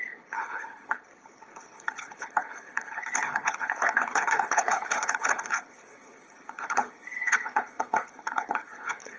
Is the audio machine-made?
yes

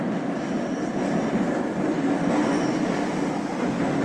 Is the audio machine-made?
no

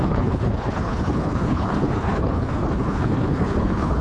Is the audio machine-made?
yes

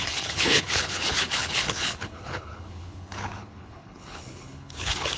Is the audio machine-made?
yes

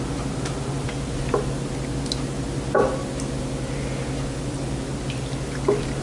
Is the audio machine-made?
no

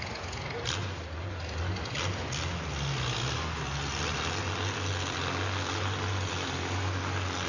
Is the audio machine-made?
no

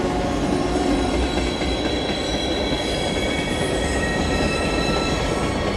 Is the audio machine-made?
no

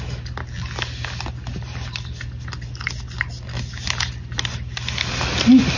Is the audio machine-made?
no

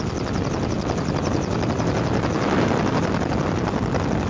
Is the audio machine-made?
no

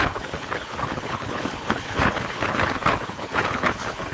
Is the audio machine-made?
yes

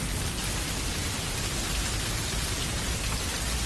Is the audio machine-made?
no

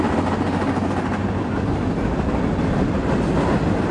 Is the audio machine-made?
no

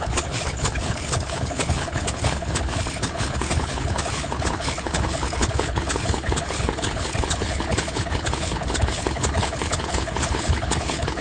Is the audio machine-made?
yes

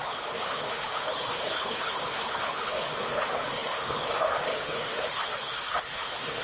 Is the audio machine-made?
yes